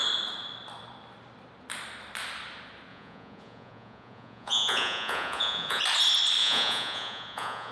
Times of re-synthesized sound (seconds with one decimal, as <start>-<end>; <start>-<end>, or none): 2.9-5.8; 6.4-7.7